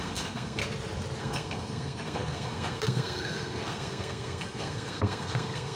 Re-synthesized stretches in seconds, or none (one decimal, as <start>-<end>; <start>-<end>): 0.0-0.6; 1.2-5.8